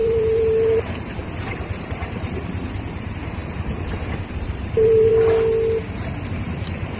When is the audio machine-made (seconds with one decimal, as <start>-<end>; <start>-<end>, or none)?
0.0-5.1; 6.4-7.0